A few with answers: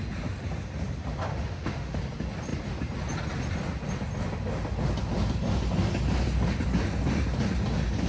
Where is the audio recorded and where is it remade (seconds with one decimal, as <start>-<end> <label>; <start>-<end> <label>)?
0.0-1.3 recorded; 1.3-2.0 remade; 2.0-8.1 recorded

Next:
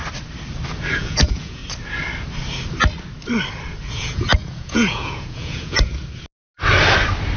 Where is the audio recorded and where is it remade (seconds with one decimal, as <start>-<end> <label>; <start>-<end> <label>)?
0.0-0.9 recorded; 0.9-1.6 remade; 1.6-3.9 recorded; 3.9-6.0 remade; 6.0-7.4 recorded

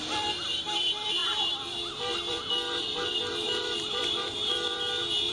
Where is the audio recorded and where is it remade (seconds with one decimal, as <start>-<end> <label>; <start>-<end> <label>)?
0.0-5.3 remade

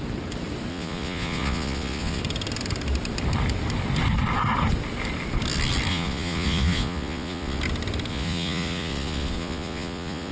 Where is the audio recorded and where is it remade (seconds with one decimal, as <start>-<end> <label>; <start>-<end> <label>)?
0.0-0.7 recorded; 0.7-2.2 remade; 2.2-5.9 recorded; 5.9-7.6 remade; 7.6-8.1 recorded; 8.1-10.3 remade

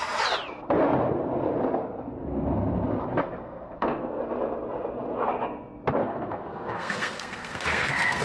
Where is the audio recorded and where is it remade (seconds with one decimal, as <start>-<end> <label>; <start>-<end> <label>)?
0.0-3.4 recorded; 3.4-4.2 remade; 4.2-6.0 recorded; 6.0-8.2 remade

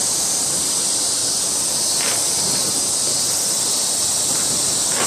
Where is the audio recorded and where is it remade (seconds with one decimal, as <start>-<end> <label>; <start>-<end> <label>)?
0.0-1.2 remade; 1.2-4.3 recorded; 4.3-5.1 remade